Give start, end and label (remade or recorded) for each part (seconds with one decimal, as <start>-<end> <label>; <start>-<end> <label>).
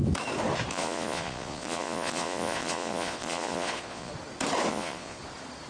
0.0-0.7 recorded; 0.7-4.1 remade; 4.1-4.7 recorded; 4.7-5.2 remade; 5.2-5.7 recorded